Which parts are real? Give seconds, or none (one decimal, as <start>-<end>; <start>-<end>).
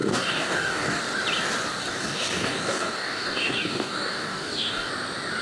1.0-1.8; 4.9-5.4